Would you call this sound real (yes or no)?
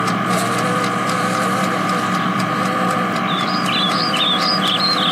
yes